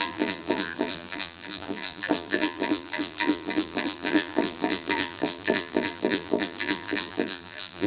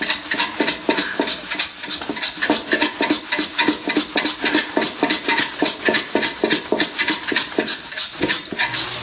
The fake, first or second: first